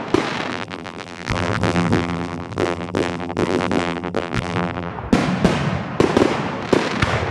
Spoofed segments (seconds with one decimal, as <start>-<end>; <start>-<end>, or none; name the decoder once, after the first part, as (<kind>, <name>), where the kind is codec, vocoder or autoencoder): 0.5-4.9 (vocoder, BigVGAN v2)